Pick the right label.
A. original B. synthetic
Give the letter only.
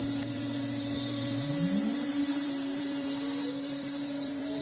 B